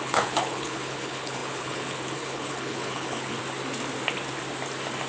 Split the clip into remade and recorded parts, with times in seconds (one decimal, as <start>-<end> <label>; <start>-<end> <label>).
0.0-3.4 remade; 3.4-5.1 recorded